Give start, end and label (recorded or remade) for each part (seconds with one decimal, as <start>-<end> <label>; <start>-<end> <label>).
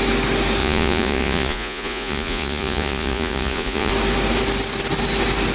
0.0-0.6 recorded; 0.6-3.9 remade; 3.9-5.5 recorded